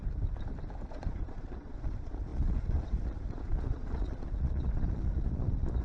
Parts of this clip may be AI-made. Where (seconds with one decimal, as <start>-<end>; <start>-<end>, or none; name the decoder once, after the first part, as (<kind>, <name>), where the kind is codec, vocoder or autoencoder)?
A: 0.9-5.8 (vocoder, Vocos)